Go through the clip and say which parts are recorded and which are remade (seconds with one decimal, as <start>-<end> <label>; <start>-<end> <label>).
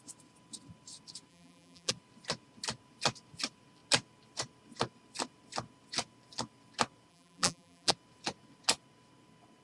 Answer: 0.0-1.3 recorded; 1.3-1.9 remade; 1.9-7.1 recorded; 7.1-7.9 remade; 7.9-9.6 recorded